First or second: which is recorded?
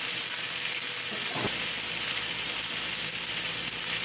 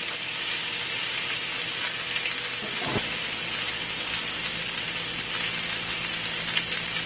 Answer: second